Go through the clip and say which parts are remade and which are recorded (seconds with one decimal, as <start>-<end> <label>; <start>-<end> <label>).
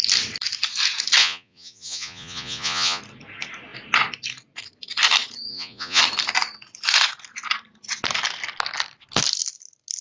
0.0-1.2 recorded; 1.2-3.0 remade; 3.0-5.5 recorded; 5.5-6.0 remade; 6.0-10.0 recorded